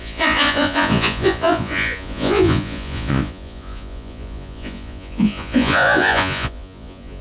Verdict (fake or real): fake